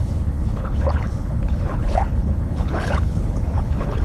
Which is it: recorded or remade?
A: remade